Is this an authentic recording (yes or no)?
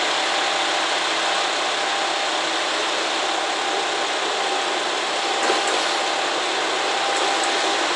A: yes